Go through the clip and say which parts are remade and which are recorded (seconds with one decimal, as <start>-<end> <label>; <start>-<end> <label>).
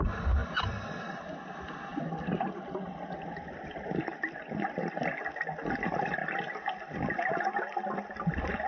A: 0.0-0.4 recorded; 0.4-1.5 remade; 1.5-1.9 recorded; 1.9-4.8 remade; 4.8-8.7 recorded